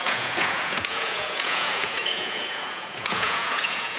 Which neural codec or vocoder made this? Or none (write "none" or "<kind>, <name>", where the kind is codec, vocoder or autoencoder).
vocoder, Vocos